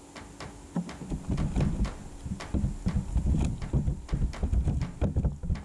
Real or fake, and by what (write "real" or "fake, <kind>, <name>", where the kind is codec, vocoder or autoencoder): real